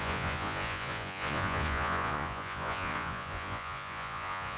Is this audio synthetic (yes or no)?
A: yes